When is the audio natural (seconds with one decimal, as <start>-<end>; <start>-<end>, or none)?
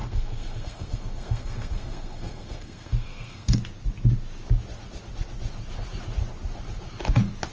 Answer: 3.6-7.5